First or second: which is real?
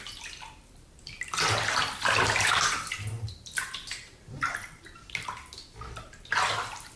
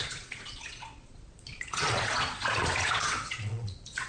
first